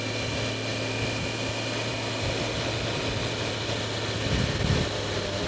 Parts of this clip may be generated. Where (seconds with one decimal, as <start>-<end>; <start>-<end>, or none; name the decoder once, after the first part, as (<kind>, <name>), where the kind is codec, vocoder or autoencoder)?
none